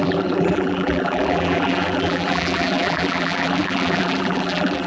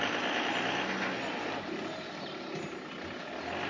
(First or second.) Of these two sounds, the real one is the second